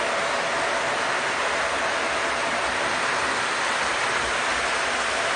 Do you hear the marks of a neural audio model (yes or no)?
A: no